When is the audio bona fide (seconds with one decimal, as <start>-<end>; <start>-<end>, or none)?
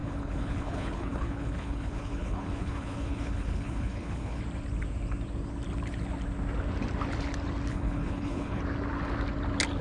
4.4-7.7; 8.6-9.8